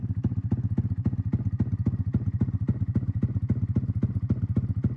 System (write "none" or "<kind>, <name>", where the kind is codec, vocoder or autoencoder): none